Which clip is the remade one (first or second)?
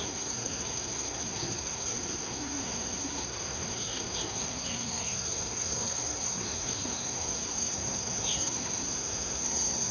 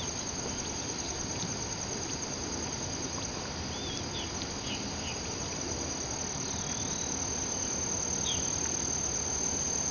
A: first